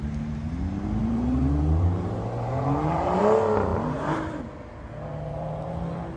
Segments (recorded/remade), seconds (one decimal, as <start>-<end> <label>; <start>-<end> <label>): 0.0-1.0 recorded; 1.0-3.2 remade; 3.2-3.7 recorded; 3.7-4.4 remade; 4.4-5.1 recorded; 5.1-5.7 remade; 5.7-6.2 recorded